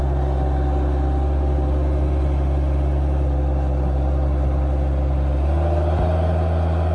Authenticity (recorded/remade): recorded